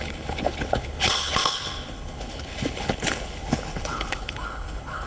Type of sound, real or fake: fake